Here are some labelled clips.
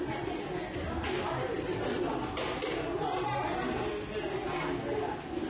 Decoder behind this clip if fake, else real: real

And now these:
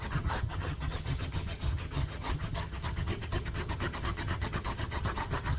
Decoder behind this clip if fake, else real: fake, vocoder, HiFi-GAN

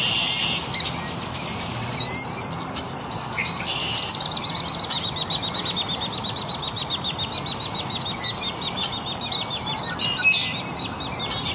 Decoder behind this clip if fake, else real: real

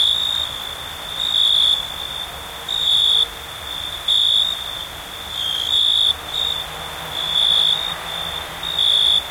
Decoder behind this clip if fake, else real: real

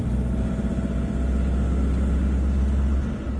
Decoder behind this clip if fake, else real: real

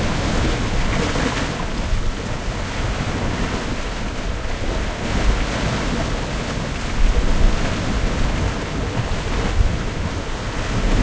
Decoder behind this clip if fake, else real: real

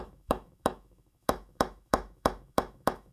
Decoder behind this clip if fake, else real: fake, autoencoder, DAC-VAE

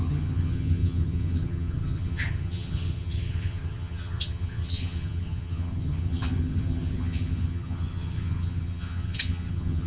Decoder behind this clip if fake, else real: fake, vocoder, HiFi-GAN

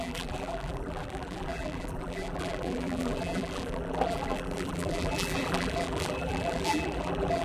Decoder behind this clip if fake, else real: fake, vocoder, BigVGAN v2